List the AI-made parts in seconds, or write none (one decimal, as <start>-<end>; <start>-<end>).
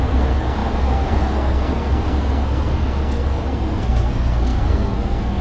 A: 0.0-5.4